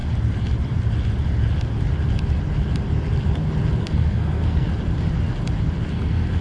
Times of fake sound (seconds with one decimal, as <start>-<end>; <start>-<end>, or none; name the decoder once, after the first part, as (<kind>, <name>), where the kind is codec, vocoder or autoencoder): 3.8-4.7 (codec, SNAC); 5.9-6.4